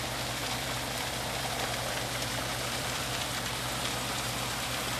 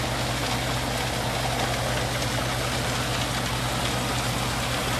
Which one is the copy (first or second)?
first